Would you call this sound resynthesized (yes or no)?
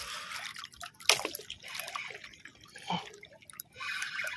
no